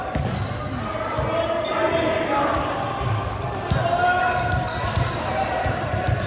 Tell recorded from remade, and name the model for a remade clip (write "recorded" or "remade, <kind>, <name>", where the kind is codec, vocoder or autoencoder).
recorded